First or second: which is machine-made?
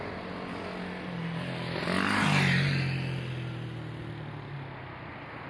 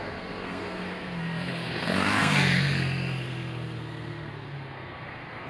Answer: second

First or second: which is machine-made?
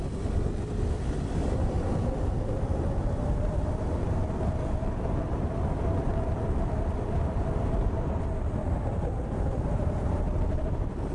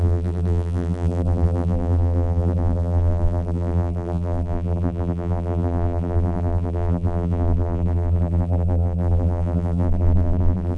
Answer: second